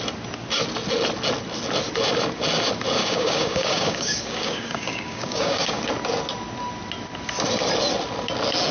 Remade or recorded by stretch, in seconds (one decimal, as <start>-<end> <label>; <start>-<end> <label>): 0.0-3.0 recorded; 3.0-5.8 remade; 5.8-8.7 recorded

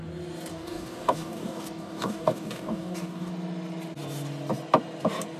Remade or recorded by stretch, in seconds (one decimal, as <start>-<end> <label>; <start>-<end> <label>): 0.0-0.5 recorded; 0.5-3.3 remade; 3.3-5.4 recorded

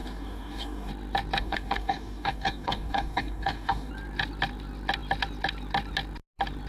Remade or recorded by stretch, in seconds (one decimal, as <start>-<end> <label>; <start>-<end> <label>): 0.0-0.9 remade; 0.9-1.4 recorded; 1.4-3.9 remade; 3.9-6.7 recorded